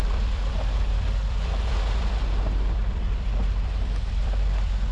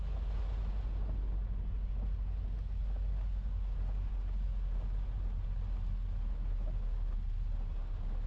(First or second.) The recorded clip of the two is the second